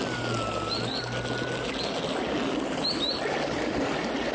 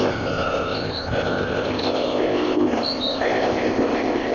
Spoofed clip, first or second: second